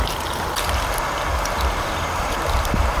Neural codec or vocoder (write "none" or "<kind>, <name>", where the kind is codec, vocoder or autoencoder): none